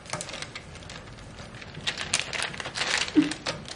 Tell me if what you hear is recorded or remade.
recorded